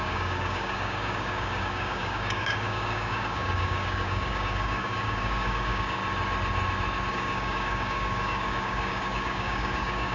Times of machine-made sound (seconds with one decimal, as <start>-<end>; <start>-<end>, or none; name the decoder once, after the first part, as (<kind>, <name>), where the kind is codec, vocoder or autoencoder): 0.0-6.0 (codec, DAC); 7.1-10.1